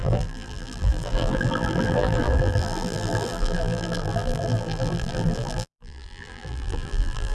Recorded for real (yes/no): no